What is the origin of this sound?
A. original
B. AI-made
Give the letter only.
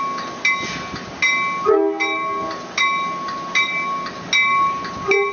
A